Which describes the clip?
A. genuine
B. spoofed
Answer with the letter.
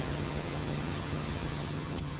B